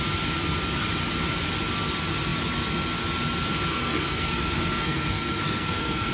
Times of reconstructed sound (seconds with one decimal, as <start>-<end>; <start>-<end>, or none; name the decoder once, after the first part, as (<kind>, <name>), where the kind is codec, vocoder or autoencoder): 3.7-6.1 (codec, SNAC)